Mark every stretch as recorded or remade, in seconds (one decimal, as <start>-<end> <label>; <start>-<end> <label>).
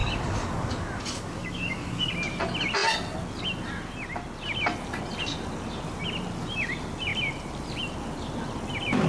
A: 0.0-2.1 remade; 2.1-9.1 recorded